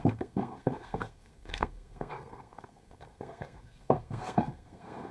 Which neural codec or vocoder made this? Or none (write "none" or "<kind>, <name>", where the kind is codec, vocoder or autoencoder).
codec, SNAC